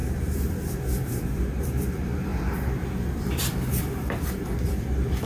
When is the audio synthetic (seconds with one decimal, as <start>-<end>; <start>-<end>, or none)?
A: 0.0-2.3; 3.1-5.3